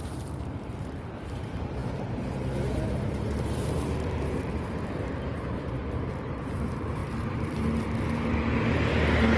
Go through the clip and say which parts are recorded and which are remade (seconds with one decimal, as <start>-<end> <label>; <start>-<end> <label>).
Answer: 0.0-7.0 remade; 7.0-9.4 recorded